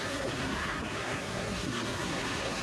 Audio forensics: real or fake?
fake